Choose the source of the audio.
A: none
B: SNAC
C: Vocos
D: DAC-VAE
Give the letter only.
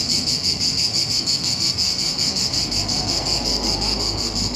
B